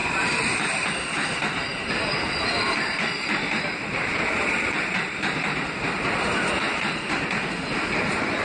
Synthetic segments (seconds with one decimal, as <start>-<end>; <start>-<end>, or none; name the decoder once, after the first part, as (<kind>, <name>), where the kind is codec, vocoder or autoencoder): 0.0-0.9 (vocoder, BigVGAN v2); 1.7-5.7